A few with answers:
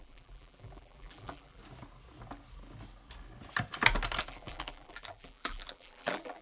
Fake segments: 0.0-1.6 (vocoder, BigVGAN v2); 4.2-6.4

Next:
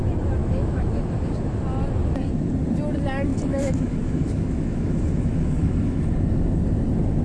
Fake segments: 0.4-1.6 (autoencoder, DAC-VAE); 3.3-6.0

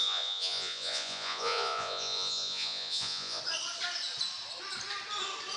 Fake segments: 0.0-3.4 (vocoder, Vocos)

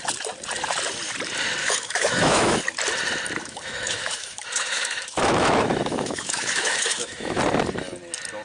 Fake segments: 1.6-2.6 (autoencoder, DAC-VAE); 3.4-7.4

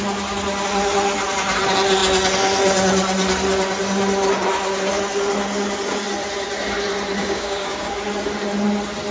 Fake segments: 7.2-7.9 (codec, DAC)

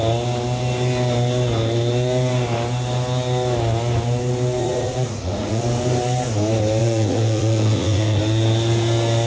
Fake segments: 4.6-5.6 (vocoder, Vocos); 6.8-8.2